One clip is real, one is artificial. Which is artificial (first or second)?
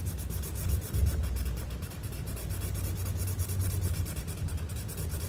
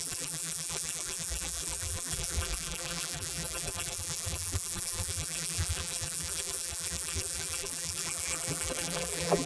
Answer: second